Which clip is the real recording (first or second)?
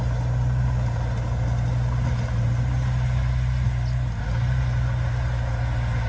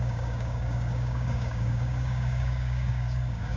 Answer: first